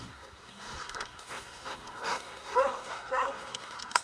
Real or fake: fake